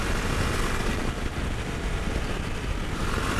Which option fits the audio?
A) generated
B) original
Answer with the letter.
B